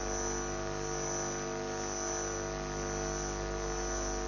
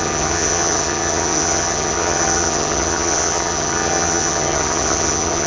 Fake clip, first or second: second